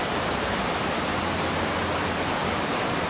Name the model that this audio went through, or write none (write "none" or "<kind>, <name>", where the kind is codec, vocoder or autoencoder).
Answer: none